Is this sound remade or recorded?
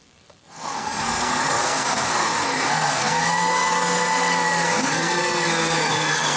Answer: remade